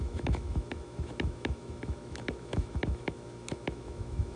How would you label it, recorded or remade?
remade